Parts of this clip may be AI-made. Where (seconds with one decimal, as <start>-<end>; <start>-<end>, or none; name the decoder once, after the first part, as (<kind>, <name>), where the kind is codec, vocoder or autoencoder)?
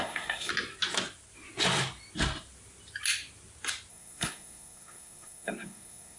0.0-0.5 (codec, SNAC); 3.9-6.2